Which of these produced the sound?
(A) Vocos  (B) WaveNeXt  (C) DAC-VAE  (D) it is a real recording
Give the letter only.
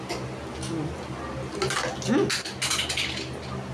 D